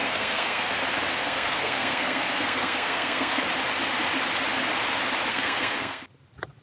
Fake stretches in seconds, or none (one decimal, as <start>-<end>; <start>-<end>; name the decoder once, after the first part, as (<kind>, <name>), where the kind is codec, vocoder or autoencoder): 0.0-0.7 (codec, SNAC); 1.1-3.4; 5.3-6.0